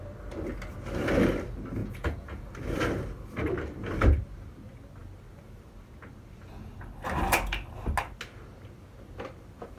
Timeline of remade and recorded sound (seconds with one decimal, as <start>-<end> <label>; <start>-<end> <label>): 0.0-1.8 recorded; 1.8-2.5 remade; 2.5-9.8 recorded